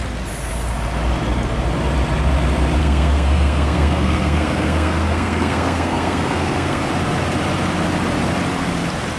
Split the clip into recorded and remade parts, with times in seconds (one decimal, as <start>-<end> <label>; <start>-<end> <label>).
0.0-2.8 recorded; 2.8-6.8 remade; 6.8-9.2 recorded